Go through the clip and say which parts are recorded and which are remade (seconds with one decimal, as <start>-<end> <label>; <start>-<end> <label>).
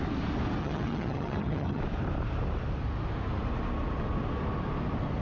0.0-0.6 recorded; 0.6-1.8 remade; 1.8-5.2 recorded